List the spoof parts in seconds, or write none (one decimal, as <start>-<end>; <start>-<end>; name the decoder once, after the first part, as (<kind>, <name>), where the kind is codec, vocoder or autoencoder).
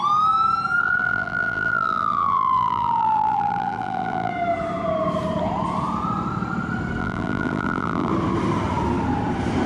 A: 0.8-4.3 (vocoder, BigVGAN v2); 7.0-8.1